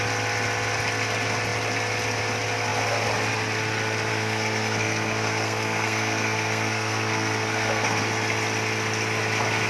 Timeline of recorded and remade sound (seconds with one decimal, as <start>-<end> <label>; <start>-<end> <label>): 0.0-4.1 recorded; 4.1-8.0 remade; 8.0-9.7 recorded